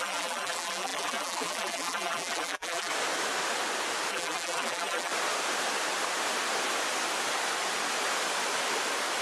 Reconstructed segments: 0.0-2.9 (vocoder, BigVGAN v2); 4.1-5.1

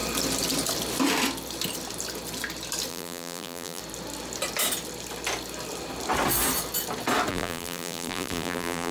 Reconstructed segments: 2.9-3.8 (vocoder, BigVGAN v2); 7.3-8.9

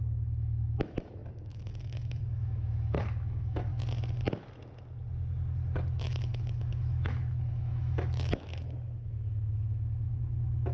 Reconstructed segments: 0.0-3.7 (autoencoder, DAC-VAE); 6.0-10.7

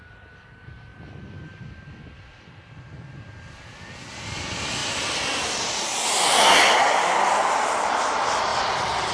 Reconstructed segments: 0.9-1.8 (vocoder, BigVGAN v2); 4.8-5.4; 8.5-9.1

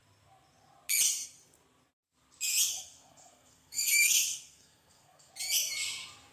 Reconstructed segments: 2.7-5.3 (codec, SNAC)

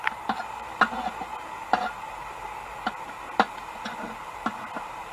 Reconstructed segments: none